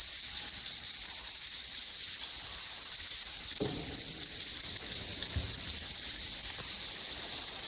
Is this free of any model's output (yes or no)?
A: yes